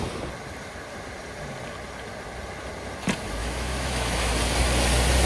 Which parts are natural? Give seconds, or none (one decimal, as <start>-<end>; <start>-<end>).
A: 0.0-3.4; 4.3-5.3